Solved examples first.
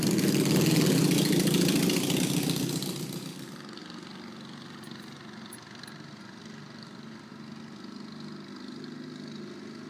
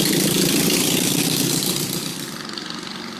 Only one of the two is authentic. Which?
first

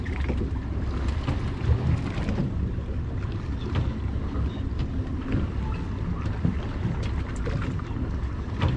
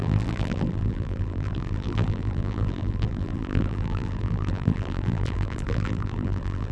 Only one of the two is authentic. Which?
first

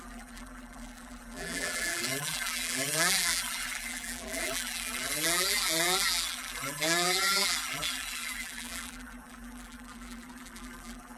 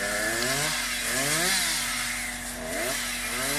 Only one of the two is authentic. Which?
second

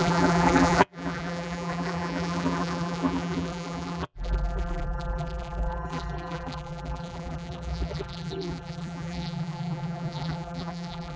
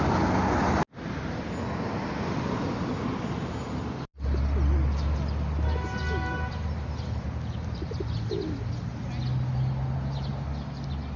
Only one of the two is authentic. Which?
second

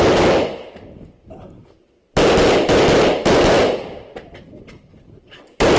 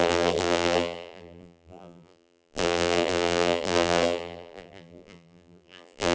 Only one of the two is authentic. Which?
first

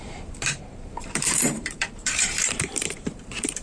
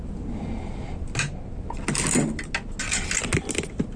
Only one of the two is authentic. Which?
second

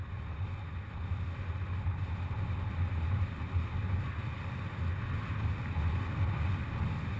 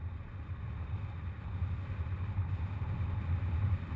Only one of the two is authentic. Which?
first